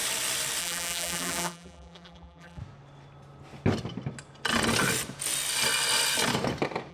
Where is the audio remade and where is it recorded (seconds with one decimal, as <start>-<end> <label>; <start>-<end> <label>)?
0.0-0.6 recorded; 0.6-2.6 remade; 2.6-6.9 recorded